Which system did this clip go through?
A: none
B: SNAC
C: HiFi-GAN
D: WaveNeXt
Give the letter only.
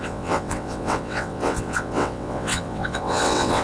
D